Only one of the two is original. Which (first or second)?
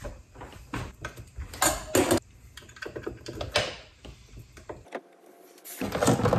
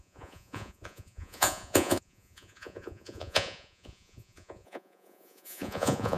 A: first